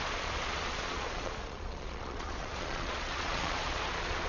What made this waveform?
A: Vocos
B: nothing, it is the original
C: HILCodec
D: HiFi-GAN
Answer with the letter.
A